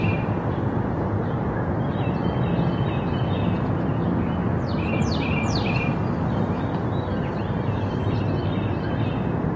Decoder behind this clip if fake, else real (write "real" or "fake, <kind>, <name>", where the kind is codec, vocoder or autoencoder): real